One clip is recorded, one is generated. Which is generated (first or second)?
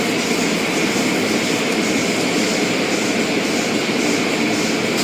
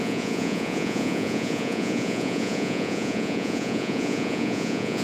second